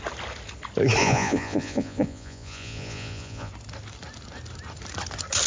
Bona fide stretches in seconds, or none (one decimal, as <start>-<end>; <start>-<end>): 0.0-1.0; 3.5-5.5